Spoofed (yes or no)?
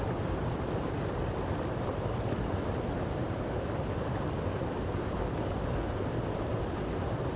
no